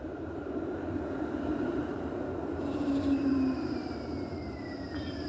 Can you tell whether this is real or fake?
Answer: fake